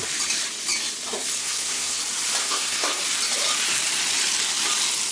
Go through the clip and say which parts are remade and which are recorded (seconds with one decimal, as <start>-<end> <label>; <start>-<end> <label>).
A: 0.0-1.4 recorded; 1.4-2.0 remade; 2.0-2.4 recorded; 2.4-3.0 remade; 3.0-5.1 recorded